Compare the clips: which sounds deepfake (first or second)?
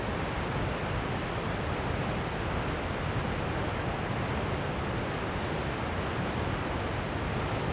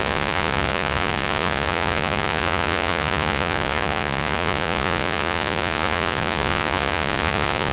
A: second